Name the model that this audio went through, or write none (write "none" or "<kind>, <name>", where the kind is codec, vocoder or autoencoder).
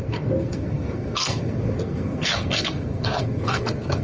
codec, SNAC